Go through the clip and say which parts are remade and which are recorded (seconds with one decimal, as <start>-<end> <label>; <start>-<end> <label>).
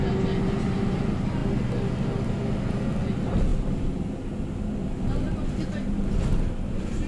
0.0-7.1 recorded